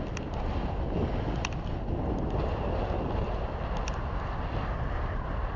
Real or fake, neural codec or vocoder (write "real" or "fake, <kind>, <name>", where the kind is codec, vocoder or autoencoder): real